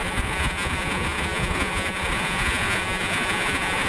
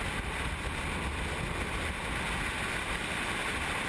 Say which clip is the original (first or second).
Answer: second